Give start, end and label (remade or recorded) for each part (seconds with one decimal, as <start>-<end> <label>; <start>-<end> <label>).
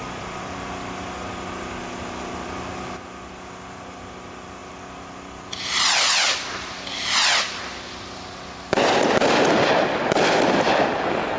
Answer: 0.0-11.4 recorded